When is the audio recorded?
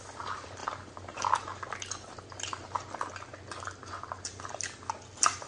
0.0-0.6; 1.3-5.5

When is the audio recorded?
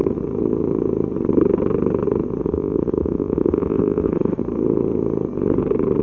0.0-2.4; 4.4-6.0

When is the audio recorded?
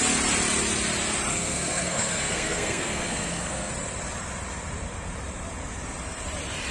0.0-1.3; 3.7-6.7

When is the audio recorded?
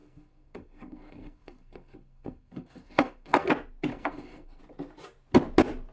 3.5-3.9; 4.6-5.9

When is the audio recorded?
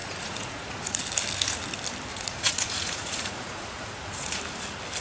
1.0-2.1; 4.4-5.0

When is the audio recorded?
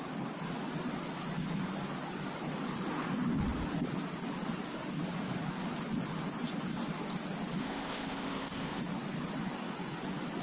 0.0-7.6; 8.8-10.4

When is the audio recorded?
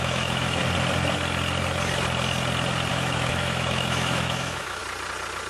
0.6-2.9; 4.8-5.5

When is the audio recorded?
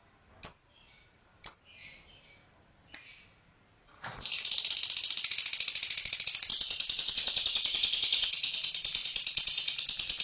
0.0-0.5; 1.7-3.9; 4.7-6.5